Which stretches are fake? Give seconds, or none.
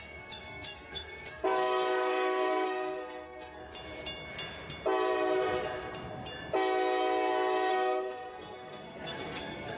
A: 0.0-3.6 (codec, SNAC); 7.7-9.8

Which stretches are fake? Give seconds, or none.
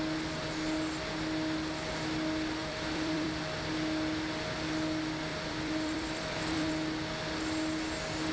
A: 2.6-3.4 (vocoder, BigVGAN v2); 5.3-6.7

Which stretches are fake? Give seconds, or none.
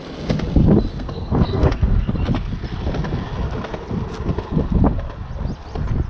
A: 0.9-2.1 (codec, SNAC)